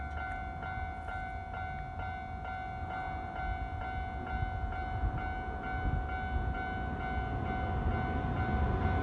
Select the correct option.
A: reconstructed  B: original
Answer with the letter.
B